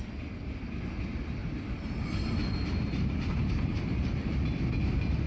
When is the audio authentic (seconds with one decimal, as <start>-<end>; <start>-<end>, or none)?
0.0-1.4; 4.6-5.3